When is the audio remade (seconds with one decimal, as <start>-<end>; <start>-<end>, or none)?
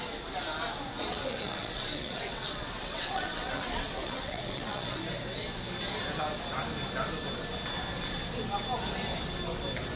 1.1-5.0